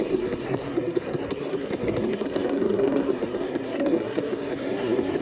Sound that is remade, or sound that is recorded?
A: remade